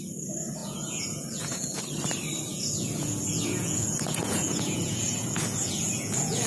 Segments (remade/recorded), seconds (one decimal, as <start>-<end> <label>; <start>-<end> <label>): 0.0-0.6 recorded; 0.6-1.8 remade; 1.8-2.5 recorded; 2.5-6.5 remade